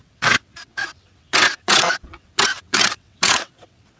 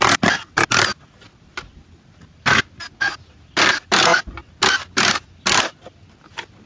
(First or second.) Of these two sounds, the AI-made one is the first